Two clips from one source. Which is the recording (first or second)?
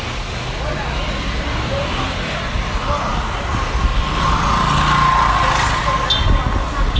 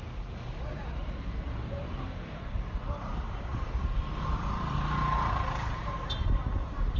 first